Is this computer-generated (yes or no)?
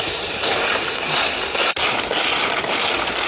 no